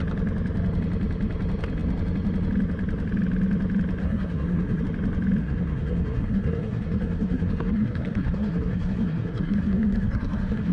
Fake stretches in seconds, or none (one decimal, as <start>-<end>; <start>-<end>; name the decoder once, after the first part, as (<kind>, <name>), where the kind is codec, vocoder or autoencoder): 4.0-4.8 (codec, SNAC); 5.4-10.7